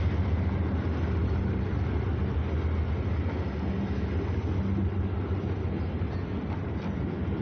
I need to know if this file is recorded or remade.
recorded